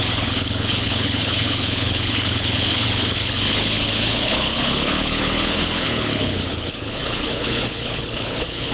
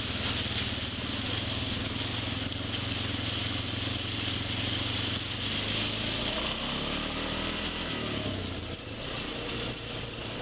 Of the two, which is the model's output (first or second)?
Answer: first